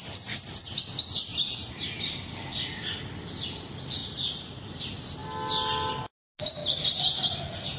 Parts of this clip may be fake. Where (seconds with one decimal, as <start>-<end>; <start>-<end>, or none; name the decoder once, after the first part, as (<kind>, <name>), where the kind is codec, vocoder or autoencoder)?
1.3-2.0 (vocoder, BigVGAN v2); 4.0-4.8